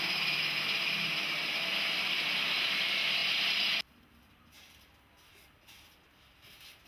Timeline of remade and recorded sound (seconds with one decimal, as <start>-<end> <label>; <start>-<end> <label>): 0.0-6.9 recorded